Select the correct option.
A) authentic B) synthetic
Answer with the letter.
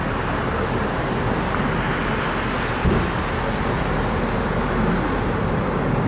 A